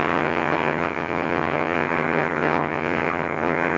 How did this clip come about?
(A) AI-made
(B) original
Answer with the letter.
A